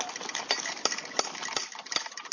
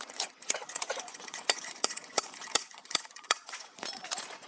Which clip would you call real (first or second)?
first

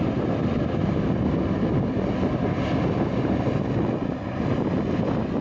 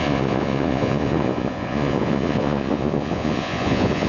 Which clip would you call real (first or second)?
first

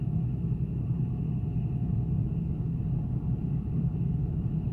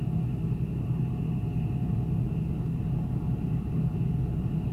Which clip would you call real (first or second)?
second